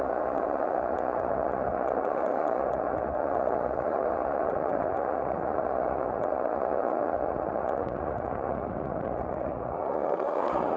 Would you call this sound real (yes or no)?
no